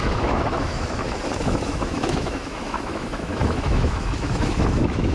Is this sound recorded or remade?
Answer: remade